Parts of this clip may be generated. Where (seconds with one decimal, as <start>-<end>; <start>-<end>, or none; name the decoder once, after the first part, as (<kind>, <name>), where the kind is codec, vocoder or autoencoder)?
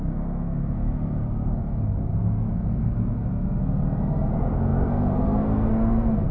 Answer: 0.0-1.6 (codec, SNAC); 2.5-3.3; 4.0-6.3